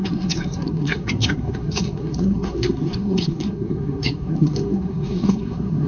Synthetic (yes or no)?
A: yes